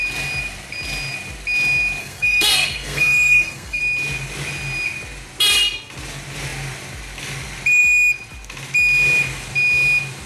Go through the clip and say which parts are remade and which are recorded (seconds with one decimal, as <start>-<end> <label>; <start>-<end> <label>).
0.0-2.0 recorded; 2.0-3.8 remade; 3.8-10.3 recorded